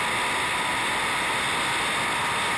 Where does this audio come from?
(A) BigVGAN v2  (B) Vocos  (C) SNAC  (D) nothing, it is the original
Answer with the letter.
D